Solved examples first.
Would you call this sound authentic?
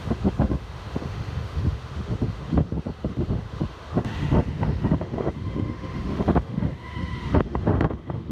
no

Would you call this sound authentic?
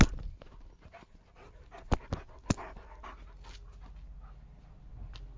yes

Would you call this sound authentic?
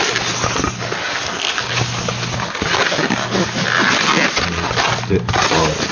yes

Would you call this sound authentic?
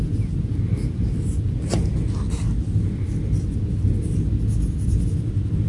yes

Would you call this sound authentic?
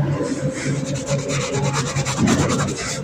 yes